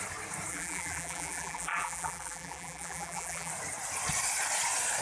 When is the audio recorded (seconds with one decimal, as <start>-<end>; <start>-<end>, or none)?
0.0-0.5; 3.5-5.0